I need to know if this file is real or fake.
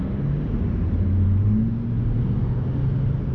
real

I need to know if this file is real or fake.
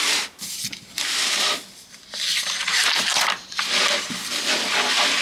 real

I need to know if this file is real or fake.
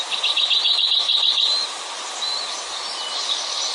real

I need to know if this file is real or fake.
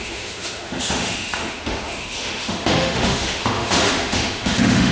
fake